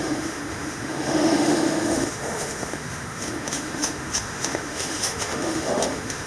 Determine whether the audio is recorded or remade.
remade